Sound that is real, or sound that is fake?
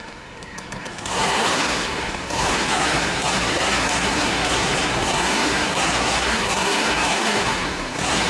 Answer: fake